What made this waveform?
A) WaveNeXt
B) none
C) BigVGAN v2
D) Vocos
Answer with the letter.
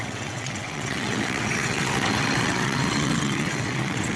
A